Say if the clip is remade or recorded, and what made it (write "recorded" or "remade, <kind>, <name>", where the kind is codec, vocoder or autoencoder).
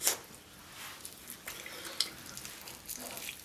recorded